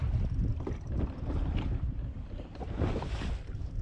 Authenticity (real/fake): fake